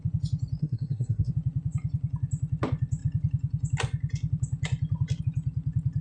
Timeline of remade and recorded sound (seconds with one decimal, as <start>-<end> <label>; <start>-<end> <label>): 0.0-0.6 recorded; 0.6-1.3 remade; 1.3-6.0 recorded